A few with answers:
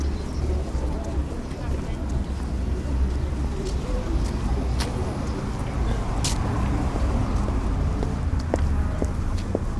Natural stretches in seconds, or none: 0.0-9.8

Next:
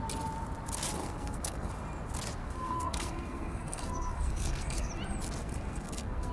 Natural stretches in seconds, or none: 0.0-1.0; 1.7-2.4; 4.9-5.4

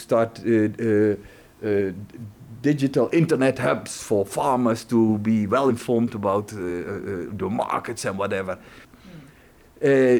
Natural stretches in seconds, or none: 0.0-1.3; 1.8-5.1; 5.7-10.2

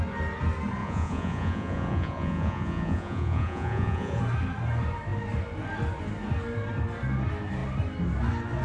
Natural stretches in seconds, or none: 0.0-0.8; 4.2-8.6